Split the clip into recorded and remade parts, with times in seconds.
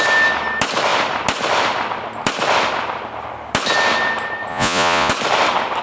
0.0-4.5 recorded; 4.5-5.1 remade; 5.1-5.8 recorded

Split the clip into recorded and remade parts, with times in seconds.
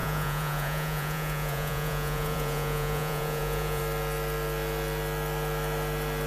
0.0-3.8 remade; 3.8-6.3 recorded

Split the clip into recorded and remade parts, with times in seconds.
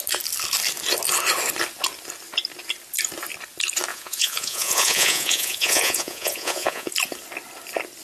0.0-3.9 recorded; 3.9-6.9 remade; 6.9-8.0 recorded